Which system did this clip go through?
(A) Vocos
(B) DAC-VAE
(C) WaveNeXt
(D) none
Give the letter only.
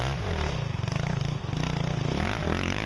D